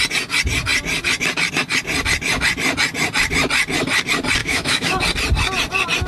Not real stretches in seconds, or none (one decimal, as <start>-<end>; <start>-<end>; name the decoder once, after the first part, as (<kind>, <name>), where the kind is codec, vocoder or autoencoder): 4.4-5.0 (autoencoder, DAC-VAE)